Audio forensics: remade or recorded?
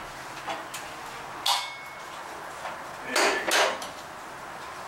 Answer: recorded